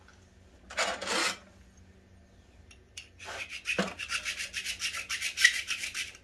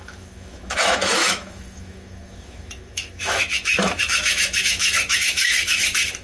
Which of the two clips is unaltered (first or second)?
first